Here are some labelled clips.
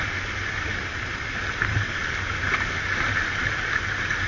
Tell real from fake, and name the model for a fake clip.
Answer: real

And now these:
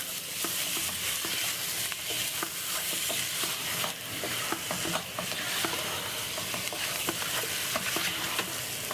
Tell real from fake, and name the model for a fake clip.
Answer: real